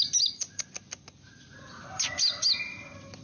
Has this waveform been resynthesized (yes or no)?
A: no